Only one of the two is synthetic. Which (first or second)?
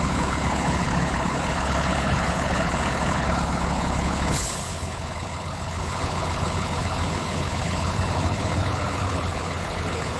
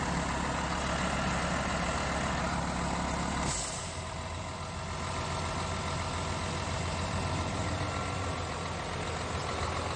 first